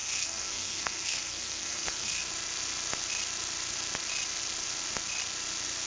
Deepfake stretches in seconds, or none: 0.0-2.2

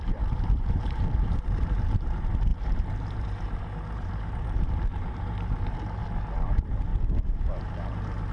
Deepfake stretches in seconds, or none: 0.0-6.0; 6.5-6.9; 7.6-8.3

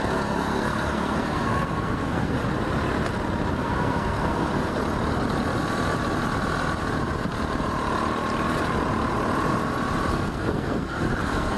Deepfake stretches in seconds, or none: 0.0-2.4; 3.5-4.8; 10.1-11.6

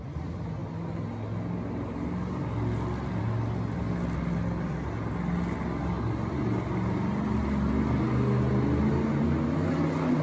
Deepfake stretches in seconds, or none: none

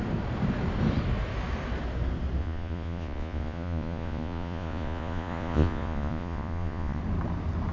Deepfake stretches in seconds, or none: 2.4-7.0